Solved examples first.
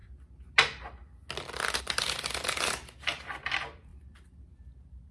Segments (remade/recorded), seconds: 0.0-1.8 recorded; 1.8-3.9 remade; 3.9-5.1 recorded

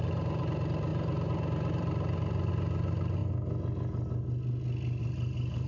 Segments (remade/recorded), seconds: 0.0-3.2 remade; 3.2-5.0 recorded; 5.0-5.7 remade